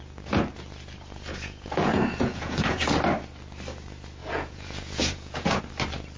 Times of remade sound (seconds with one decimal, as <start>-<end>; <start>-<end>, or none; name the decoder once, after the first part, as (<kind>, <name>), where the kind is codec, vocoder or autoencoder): 1.3-2.8 (vocoder, Vocos); 4.2-5.6